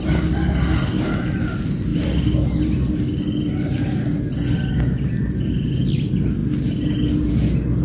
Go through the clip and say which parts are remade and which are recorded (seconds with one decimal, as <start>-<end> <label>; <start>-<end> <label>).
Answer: 0.0-7.8 recorded